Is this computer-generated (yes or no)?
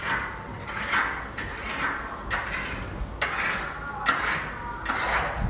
no